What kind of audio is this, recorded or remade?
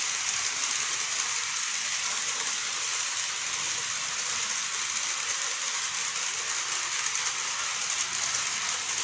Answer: recorded